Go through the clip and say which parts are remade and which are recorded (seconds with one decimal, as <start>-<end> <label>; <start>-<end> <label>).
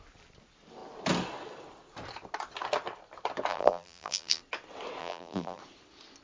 0.0-3.5 recorded; 3.5-4.4 remade; 4.4-5.0 recorded; 5.0-5.6 remade; 5.6-6.2 recorded